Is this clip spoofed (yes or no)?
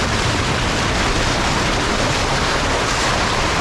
no